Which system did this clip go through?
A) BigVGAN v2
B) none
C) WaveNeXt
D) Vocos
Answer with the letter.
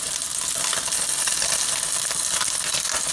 B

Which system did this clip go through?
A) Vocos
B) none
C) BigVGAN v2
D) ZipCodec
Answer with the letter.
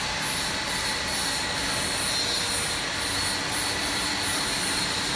B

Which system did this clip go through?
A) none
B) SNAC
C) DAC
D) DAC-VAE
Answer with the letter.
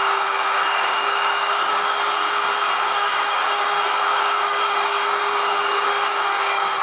C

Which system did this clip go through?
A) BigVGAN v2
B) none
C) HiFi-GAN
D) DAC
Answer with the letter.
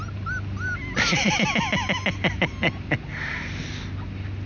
B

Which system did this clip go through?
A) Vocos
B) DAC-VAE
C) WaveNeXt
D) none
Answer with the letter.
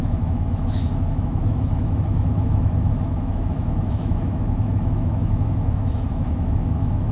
B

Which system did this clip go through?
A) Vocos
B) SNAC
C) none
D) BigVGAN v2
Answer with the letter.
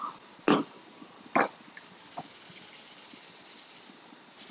C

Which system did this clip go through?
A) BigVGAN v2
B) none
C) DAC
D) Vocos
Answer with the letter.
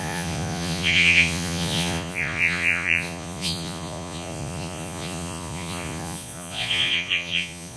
D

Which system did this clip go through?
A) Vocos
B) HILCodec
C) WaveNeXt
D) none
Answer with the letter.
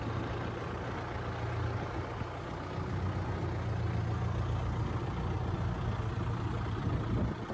D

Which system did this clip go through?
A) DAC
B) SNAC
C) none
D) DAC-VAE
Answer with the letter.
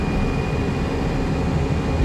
C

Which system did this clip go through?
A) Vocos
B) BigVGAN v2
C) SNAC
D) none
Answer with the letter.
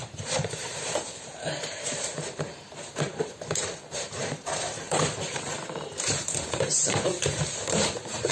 B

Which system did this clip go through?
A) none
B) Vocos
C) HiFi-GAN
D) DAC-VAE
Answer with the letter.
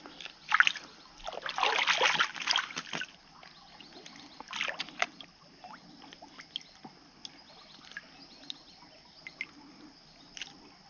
A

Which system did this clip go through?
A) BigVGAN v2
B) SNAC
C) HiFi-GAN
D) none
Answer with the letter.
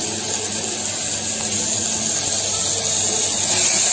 D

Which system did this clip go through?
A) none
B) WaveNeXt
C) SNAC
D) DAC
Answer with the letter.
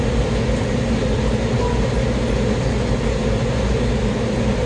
A